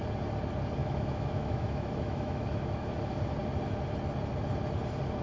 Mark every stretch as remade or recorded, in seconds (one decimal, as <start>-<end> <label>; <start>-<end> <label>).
0.0-0.8 recorded; 0.8-2.9 remade; 2.9-5.2 recorded